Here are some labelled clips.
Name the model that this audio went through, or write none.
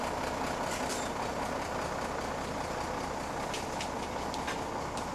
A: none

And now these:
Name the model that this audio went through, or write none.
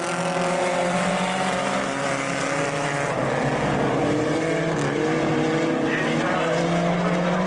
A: none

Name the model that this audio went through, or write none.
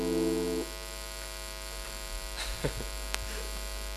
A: none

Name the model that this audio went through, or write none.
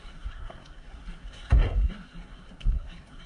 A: codec, SNAC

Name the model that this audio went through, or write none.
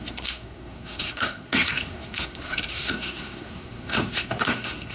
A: codec, SNAC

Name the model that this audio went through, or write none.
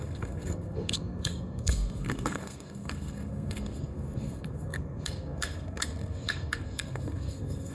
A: codec, SNAC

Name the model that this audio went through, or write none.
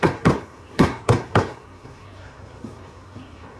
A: codec, SNAC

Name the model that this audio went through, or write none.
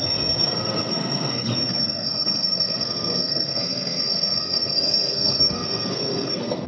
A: codec, SNAC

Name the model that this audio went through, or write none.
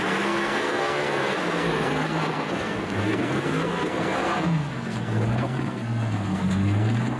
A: codec, SNAC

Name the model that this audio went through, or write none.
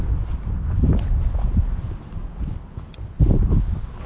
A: none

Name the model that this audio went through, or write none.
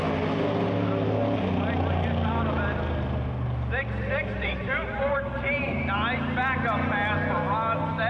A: none